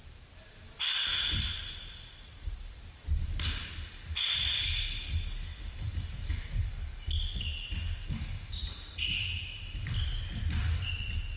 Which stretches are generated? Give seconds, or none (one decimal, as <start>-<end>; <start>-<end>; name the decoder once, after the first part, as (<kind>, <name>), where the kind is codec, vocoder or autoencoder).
0.0-3.7 (vocoder, BigVGAN v2); 5.5-6.6